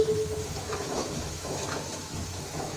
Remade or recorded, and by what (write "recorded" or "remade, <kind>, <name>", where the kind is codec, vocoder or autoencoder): remade, autoencoder, DAC-VAE